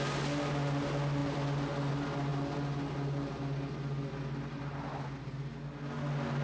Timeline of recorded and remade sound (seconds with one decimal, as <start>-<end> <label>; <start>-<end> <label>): 0.0-6.4 recorded